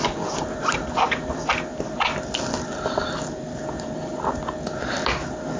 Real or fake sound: real